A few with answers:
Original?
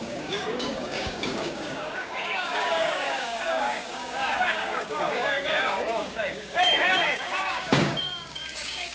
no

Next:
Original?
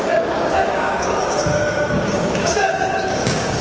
no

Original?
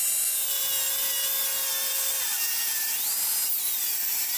yes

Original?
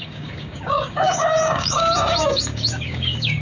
no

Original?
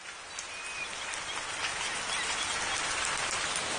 yes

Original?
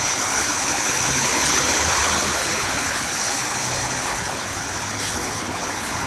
no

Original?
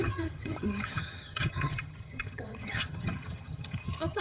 no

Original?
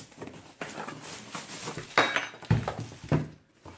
yes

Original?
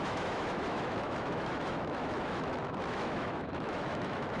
no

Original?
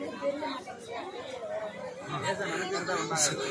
yes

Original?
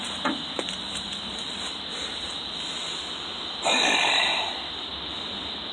yes